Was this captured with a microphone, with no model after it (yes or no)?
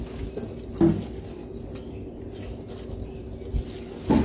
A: yes